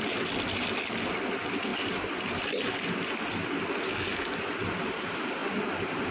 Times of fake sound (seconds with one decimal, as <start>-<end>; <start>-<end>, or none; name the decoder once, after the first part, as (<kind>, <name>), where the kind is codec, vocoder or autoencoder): none